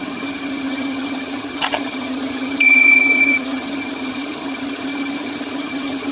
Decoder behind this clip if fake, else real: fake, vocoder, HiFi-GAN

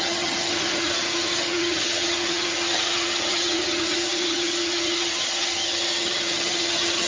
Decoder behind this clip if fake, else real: fake, vocoder, HiFi-GAN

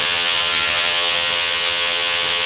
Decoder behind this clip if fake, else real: fake, vocoder, HiFi-GAN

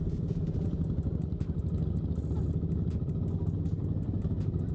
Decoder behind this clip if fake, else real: real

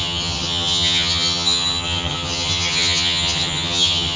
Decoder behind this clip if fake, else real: fake, vocoder, HiFi-GAN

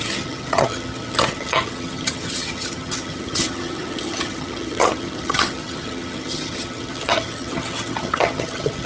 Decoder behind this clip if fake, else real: fake, vocoder, HiFi-GAN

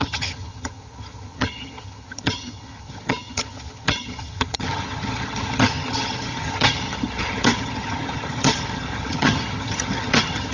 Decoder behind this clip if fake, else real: fake, vocoder, HiFi-GAN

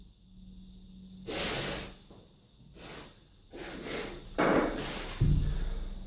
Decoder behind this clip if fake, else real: real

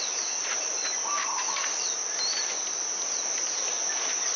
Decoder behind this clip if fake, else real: real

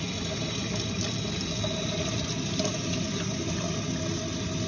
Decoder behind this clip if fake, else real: real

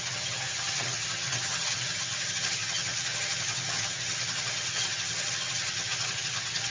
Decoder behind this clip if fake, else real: fake, vocoder, HiFi-GAN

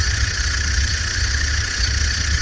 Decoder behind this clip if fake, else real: fake, vocoder, HiFi-GAN